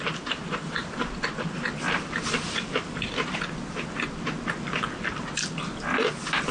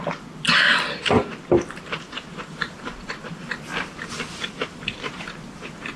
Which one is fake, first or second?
second